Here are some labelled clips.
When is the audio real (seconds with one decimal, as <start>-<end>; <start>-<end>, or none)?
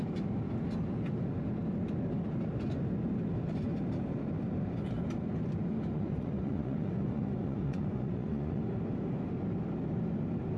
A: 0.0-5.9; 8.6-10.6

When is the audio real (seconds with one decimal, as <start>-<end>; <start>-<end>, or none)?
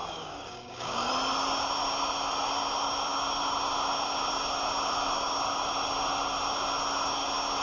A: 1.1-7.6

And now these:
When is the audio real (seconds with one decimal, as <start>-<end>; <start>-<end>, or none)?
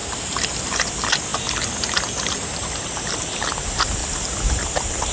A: 0.0-5.1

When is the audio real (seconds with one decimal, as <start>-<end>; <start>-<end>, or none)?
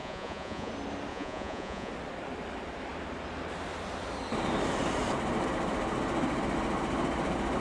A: 0.7-1.1; 1.9-7.6